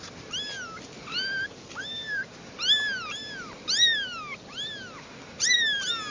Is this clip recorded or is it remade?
recorded